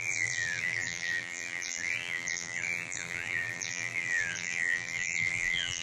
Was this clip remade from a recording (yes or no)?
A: yes